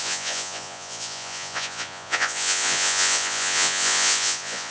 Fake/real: fake